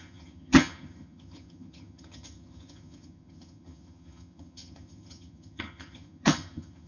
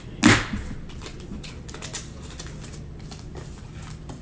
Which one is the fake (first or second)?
first